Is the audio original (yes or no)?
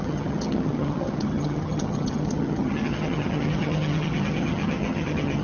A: no